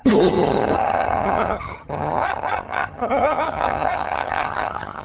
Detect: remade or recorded remade